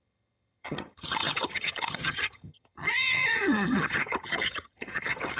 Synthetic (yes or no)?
yes